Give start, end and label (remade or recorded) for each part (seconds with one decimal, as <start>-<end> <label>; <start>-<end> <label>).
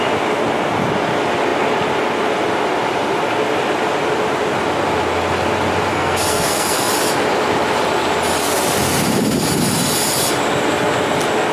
0.0-5.9 recorded; 5.9-6.9 remade; 6.9-11.5 recorded